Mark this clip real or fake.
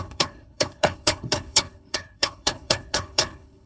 fake